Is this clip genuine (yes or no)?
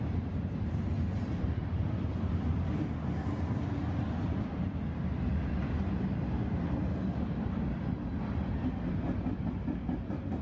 yes